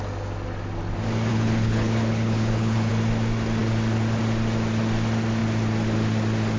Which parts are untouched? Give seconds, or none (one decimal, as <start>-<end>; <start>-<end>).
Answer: 0.0-1.3; 2.9-6.6